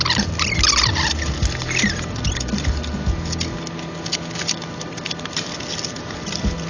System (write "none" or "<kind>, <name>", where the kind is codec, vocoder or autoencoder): none